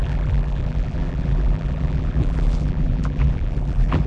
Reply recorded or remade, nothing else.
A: remade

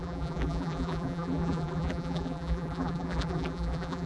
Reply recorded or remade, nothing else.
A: remade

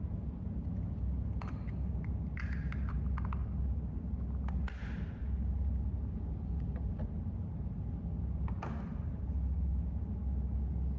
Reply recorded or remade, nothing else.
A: recorded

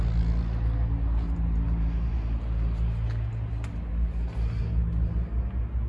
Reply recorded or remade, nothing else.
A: recorded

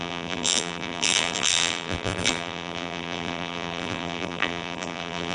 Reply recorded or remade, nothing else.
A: remade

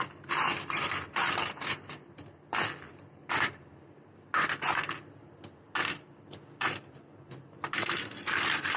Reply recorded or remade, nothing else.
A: remade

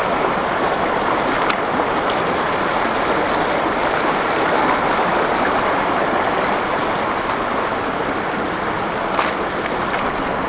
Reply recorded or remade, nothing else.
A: recorded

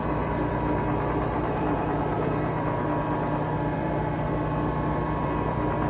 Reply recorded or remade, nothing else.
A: remade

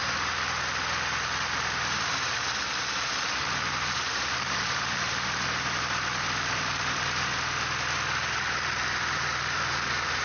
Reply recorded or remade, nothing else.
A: remade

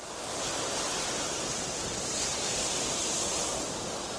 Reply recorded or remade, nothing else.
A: recorded